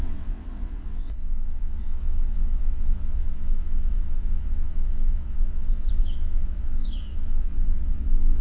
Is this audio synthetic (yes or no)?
yes